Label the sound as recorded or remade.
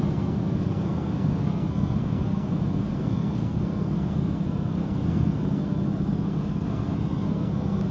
remade